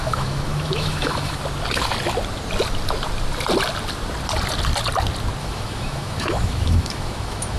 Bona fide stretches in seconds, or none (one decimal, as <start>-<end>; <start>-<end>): 1.4-5.4